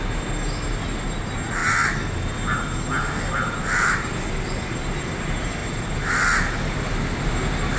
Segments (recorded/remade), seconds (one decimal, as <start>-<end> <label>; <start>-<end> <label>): 0.0-7.8 recorded